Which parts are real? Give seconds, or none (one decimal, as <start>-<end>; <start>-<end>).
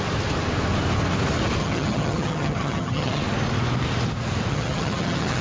0.0-1.6; 3.2-4.5